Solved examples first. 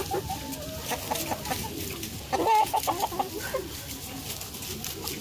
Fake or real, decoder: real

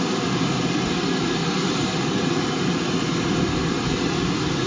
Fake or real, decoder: fake, vocoder, BigVGAN v2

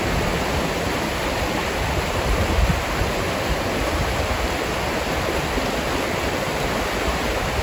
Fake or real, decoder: real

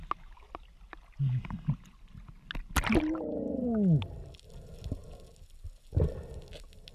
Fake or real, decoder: real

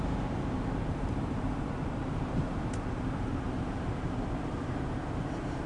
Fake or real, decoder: fake, vocoder, BigVGAN v2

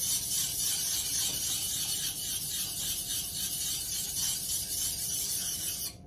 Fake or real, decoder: real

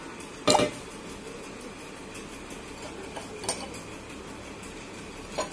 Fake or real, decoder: real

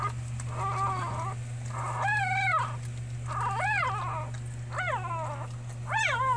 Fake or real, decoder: real